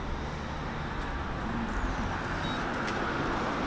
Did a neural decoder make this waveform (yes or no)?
no